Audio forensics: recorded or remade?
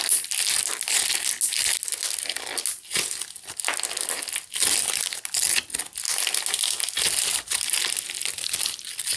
recorded